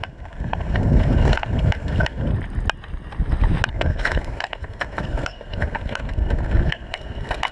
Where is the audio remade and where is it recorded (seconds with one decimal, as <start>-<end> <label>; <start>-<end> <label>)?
0.0-2.3 remade; 2.3-3.7 recorded; 3.7-7.5 remade